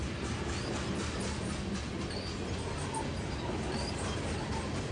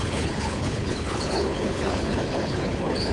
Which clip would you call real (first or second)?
first